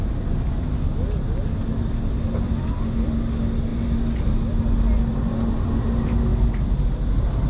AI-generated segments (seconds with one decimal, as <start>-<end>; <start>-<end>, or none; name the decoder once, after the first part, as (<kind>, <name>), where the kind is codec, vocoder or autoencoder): none